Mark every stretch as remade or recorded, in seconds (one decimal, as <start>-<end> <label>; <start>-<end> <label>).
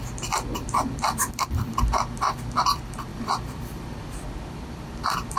0.0-1.2 recorded; 1.2-1.9 remade; 1.9-3.1 recorded; 3.1-5.4 remade